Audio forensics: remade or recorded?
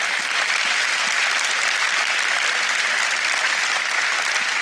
recorded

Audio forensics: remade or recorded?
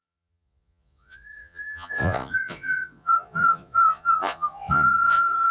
remade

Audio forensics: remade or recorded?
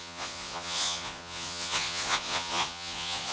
remade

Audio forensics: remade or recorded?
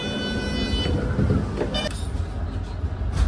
recorded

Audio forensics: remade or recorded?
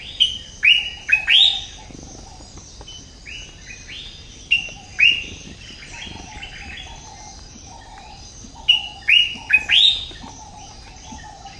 recorded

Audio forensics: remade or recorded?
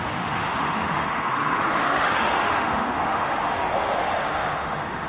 remade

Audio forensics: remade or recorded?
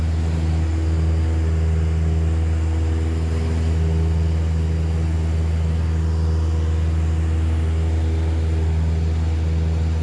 recorded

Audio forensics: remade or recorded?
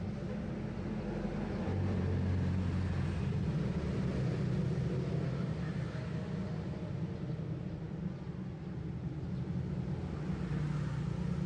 recorded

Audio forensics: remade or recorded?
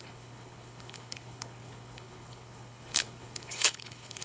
remade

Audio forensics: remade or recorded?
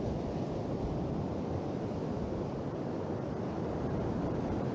recorded